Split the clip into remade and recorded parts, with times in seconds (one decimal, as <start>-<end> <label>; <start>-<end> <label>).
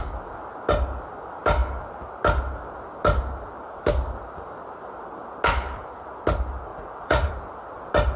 0.0-6.7 recorded; 6.7-7.3 remade; 7.3-8.2 recorded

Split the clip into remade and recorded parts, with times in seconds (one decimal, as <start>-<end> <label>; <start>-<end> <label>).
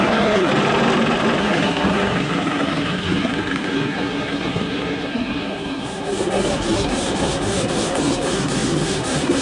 0.0-0.5 remade; 0.5-1.4 recorded; 1.4-9.4 remade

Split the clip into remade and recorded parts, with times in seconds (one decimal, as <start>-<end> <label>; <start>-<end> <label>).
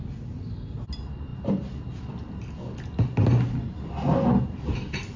0.0-5.2 recorded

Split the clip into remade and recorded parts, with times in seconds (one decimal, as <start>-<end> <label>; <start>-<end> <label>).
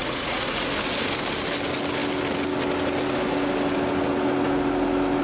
0.0-0.6 remade; 0.6-5.2 recorded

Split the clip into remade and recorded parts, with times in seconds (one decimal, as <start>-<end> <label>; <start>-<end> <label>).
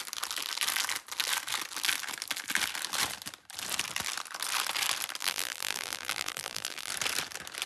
0.0-5.2 recorded; 5.2-6.9 remade; 6.9-7.7 recorded